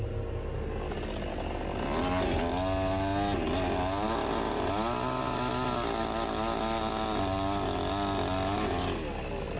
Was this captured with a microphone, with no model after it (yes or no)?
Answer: yes